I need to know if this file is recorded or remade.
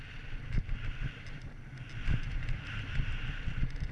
recorded